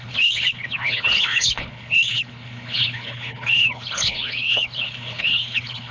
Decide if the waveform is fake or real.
fake